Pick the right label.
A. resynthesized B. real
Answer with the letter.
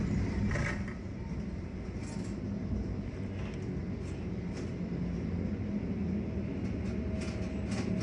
B